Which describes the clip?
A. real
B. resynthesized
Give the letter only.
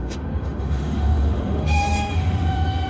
B